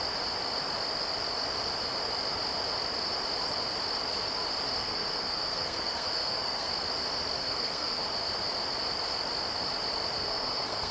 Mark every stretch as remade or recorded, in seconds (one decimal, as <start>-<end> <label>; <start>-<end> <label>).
0.0-4.8 recorded; 4.8-6.7 remade; 6.7-7.4 recorded; 7.4-8.0 remade; 8.0-10.2 recorded; 10.2-10.9 remade